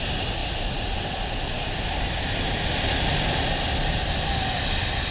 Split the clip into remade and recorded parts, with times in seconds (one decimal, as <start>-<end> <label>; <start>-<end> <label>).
0.0-5.1 recorded